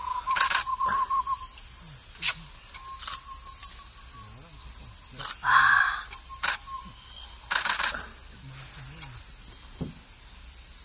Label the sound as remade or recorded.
recorded